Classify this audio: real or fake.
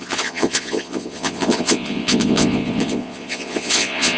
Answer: fake